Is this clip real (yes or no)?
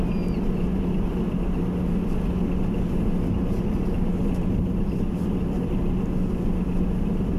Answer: yes